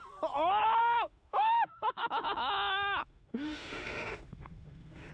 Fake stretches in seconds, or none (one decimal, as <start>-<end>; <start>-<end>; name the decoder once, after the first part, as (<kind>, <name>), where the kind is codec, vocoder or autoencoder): 0.8-2.1 (autoencoder, DAC-VAE); 3.0-5.1